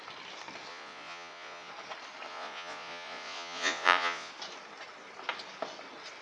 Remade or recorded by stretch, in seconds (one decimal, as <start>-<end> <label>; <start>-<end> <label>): 0.0-0.7 recorded; 0.7-1.7 remade; 1.7-2.3 recorded; 2.3-4.3 remade; 4.3-6.2 recorded